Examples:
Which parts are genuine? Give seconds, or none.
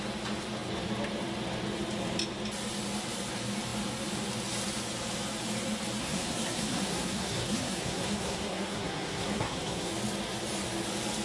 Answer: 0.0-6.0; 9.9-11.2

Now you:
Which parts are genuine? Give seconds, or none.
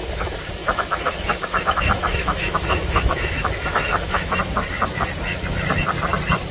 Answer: 0.0-0.6; 4.4-6.5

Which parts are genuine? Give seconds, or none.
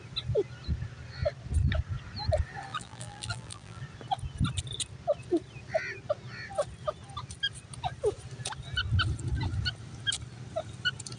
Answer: 0.0-2.7; 3.8-11.2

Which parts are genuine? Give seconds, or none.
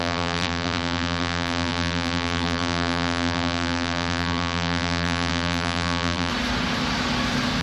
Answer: 6.3-7.6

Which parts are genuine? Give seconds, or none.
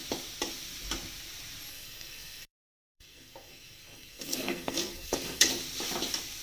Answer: 0.0-1.7; 5.5-6.4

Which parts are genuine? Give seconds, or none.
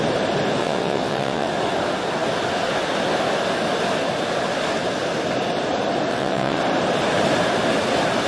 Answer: 0.0-0.6; 1.5-6.1; 6.6-8.3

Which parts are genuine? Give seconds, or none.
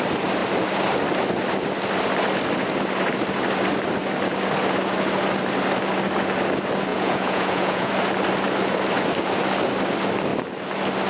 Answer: 0.0-6.9; 7.9-11.1